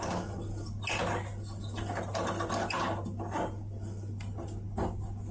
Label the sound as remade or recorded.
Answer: recorded